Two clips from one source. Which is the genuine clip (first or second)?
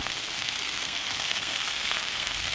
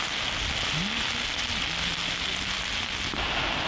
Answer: second